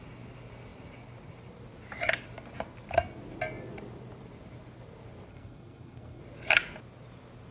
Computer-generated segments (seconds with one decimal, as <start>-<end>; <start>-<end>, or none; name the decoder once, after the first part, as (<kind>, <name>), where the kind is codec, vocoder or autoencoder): 5.3-6.2 (codec, SNAC)